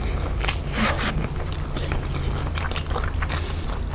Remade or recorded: recorded